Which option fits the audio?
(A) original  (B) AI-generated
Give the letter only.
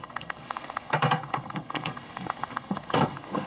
B